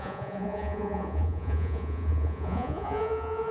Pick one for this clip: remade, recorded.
remade